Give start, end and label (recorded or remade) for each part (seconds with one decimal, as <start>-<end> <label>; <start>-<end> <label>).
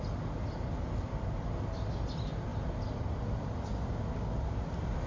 0.0-5.1 recorded